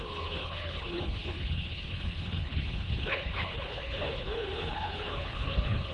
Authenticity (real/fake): fake